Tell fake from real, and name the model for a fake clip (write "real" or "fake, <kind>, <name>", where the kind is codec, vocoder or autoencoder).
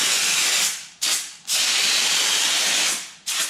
real